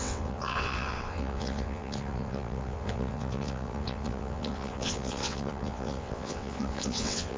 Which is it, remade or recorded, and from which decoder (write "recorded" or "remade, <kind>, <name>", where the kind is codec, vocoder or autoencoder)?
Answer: remade, vocoder, WaveNeXt